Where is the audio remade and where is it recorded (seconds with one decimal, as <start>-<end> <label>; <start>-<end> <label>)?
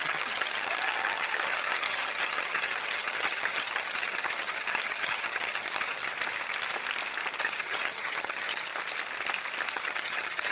0.0-6.1 remade; 6.1-7.4 recorded; 7.4-8.7 remade; 8.7-9.7 recorded; 9.7-10.5 remade